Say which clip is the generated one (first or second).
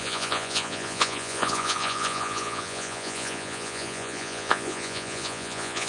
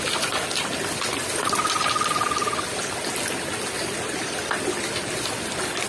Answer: first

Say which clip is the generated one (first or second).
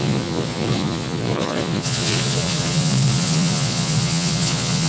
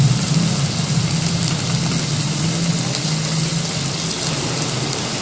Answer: first